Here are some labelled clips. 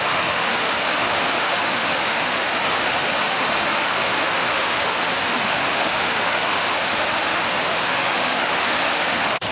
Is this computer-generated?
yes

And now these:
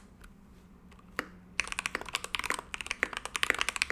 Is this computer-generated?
no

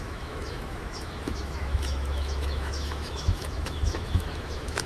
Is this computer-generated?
yes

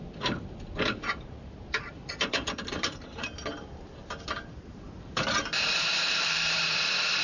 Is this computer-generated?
yes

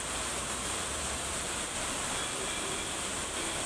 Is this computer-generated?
yes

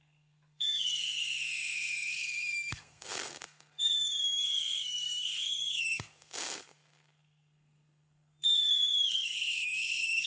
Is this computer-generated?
yes